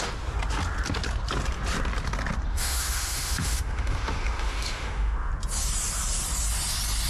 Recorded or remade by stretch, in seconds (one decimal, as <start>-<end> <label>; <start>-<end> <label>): 0.0-2.5 recorded; 2.5-5.3 remade; 5.3-7.1 recorded